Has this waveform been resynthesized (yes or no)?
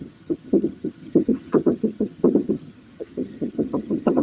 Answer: yes